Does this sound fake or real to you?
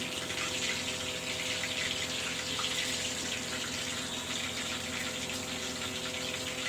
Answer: real